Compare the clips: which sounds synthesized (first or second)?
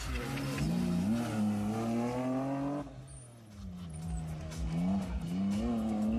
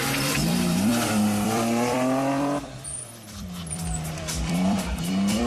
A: second